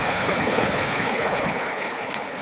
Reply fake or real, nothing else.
fake